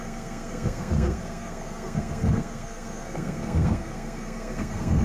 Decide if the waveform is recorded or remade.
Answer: remade